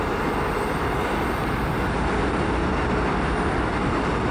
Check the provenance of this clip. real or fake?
real